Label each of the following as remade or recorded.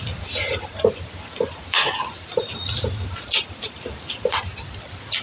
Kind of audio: remade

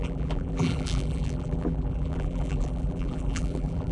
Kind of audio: remade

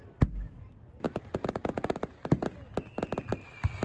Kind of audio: recorded